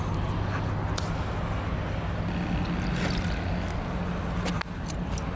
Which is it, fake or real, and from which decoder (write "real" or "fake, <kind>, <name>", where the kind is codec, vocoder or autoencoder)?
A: real